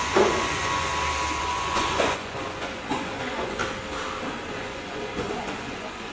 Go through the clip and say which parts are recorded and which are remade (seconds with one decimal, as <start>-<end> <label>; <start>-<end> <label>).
0.0-0.9 remade; 0.9-1.4 recorded; 1.4-3.6 remade; 3.6-4.5 recorded; 4.5-6.1 remade